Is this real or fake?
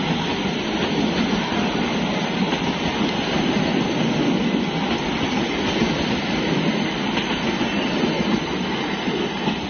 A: real